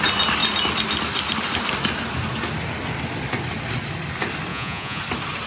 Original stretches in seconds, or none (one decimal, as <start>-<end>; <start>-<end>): 0.0-4.5; 5.0-5.5